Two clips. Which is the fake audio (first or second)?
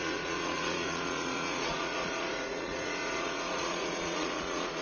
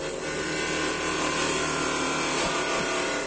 first